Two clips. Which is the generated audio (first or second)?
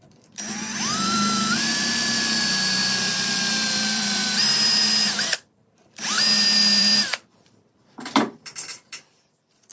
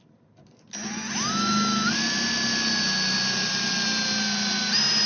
first